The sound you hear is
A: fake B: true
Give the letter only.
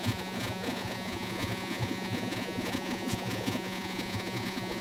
A